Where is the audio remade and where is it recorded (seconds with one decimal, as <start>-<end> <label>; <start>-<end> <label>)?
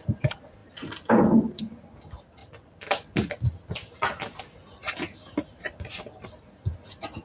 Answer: 0.0-0.6 recorded; 0.6-1.6 remade; 1.6-2.4 recorded; 2.4-6.5 remade; 6.5-7.2 recorded